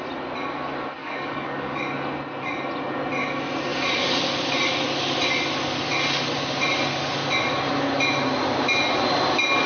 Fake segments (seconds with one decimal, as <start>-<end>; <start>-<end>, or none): 1.0-1.8